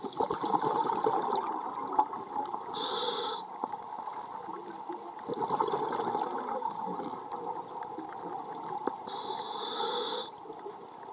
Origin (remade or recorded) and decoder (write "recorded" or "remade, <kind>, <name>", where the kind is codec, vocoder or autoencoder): recorded